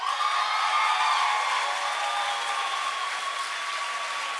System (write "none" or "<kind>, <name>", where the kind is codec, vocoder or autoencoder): none